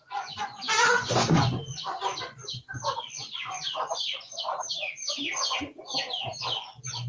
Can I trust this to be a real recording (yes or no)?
no